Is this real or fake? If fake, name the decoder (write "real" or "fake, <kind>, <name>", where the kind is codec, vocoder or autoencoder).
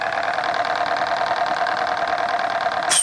real